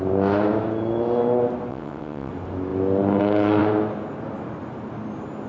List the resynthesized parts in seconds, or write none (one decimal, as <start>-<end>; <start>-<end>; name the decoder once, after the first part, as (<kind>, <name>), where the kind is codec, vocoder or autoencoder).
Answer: 1.7-2.3 (vocoder, WaveNeXt)